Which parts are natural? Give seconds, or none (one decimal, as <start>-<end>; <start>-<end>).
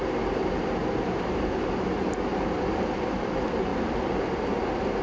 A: 0.0-0.8; 1.6-2.0; 2.7-3.7; 4.2-5.0